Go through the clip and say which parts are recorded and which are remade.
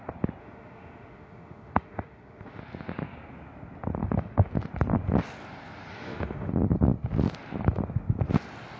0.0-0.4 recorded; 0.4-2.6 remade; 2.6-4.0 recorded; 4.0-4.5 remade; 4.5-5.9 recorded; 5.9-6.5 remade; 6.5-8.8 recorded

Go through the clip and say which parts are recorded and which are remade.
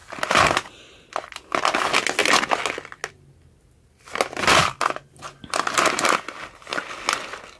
0.0-7.6 recorded